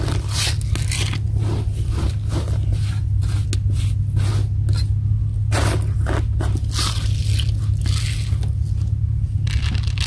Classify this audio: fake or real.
real